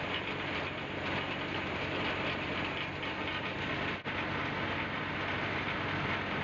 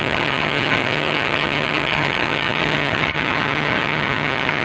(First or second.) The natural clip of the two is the first